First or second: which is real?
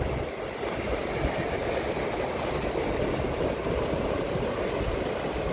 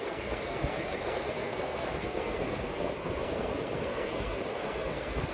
first